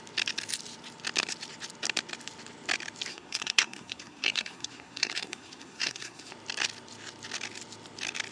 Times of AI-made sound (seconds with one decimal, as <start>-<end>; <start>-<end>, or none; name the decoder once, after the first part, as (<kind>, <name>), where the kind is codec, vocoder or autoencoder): 3.1-6.3 (codec, SNAC)